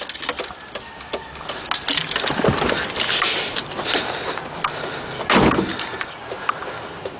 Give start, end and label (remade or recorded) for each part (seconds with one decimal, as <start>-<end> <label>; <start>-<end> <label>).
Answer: 0.0-7.2 recorded